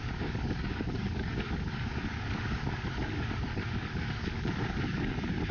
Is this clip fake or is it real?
fake